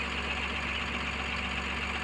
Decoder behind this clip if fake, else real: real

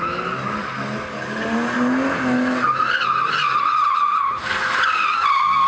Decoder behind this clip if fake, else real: real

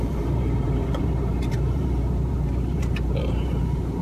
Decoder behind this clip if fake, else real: fake, vocoder, BigVGAN v2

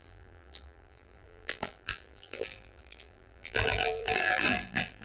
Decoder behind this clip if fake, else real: fake, vocoder, BigVGAN v2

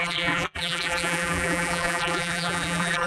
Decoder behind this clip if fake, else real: fake, vocoder, BigVGAN v2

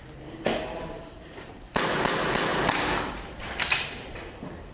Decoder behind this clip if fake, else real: fake, vocoder, BigVGAN v2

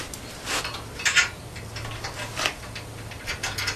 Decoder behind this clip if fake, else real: real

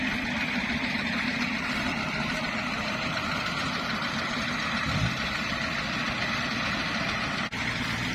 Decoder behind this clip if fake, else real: fake, vocoder, BigVGAN v2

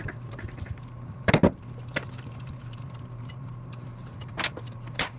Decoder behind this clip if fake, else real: fake, vocoder, BigVGAN v2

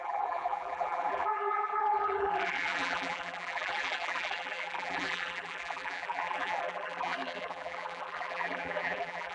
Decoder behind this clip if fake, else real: fake, vocoder, BigVGAN v2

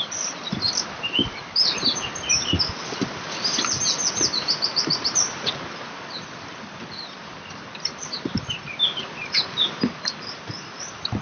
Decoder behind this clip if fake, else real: fake, vocoder, BigVGAN v2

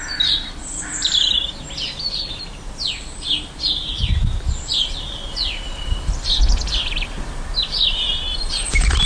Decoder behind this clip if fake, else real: fake, vocoder, BigVGAN v2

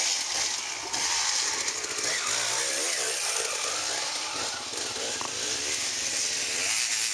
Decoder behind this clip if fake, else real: real